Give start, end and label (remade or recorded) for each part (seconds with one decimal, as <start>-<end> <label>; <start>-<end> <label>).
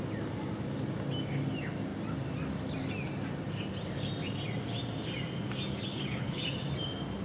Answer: 0.0-5.9 recorded; 5.9-6.4 remade; 6.4-7.2 recorded